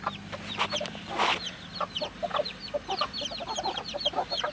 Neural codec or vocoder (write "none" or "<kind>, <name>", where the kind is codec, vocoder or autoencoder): none